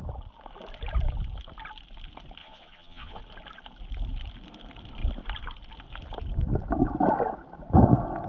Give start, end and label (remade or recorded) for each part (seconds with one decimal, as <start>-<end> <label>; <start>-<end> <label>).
0.0-2.4 recorded; 2.4-3.2 remade; 3.2-8.3 recorded